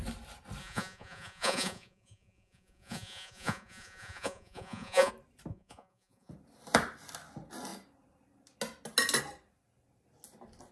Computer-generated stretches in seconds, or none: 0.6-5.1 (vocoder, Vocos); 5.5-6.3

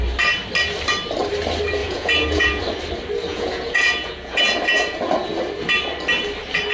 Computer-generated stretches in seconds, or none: 1.8-2.6 (vocoder, Vocos); 3.3-4.4

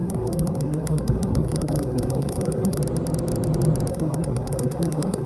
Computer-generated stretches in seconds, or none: 0.0-2.8 (codec, SNAC); 3.9-5.3